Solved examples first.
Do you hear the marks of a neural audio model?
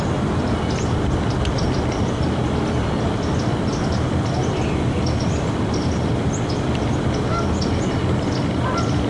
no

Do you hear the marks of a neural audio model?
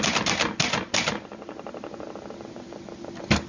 no